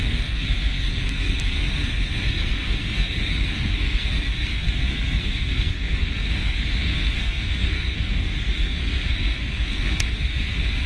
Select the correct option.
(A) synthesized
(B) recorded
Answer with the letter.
A